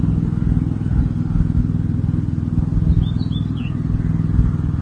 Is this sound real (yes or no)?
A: yes